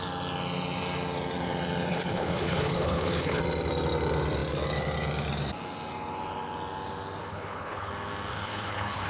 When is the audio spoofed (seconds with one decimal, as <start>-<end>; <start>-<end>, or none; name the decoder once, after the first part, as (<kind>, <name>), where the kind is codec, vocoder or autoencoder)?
1.9-3.4 (codec, HILCodec); 7.2-7.9; 8.3-9.1